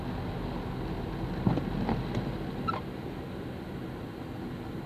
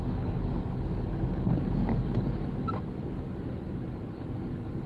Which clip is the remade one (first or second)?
second